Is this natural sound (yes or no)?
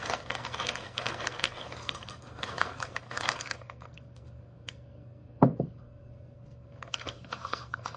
no